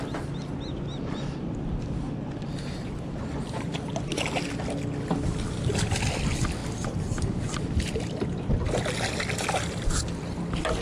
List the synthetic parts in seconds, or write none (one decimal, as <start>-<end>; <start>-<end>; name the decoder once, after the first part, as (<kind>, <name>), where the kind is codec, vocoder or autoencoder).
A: none